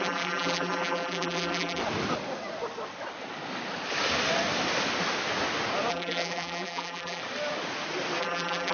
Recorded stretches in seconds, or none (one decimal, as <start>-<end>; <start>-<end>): 1.8-5.9; 7.2-8.2

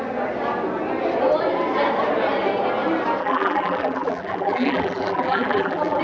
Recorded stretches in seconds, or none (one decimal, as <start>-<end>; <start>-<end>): 0.0-3.2

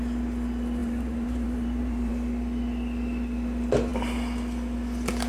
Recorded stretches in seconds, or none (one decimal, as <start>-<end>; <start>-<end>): 0.0-0.8; 2.1-5.3

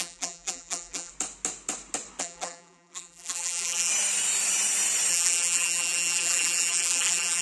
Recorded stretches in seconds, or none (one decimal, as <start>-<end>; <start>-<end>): 1.1-2.2; 3.9-5.1

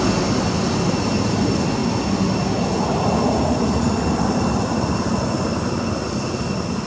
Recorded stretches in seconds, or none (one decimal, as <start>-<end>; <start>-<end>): 0.0-6.9